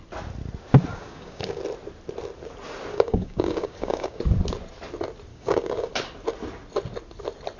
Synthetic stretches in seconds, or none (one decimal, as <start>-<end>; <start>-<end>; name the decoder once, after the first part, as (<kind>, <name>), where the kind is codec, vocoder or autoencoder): 0.9-1.6 (codec, DAC); 2.9-4.2; 5.3-5.9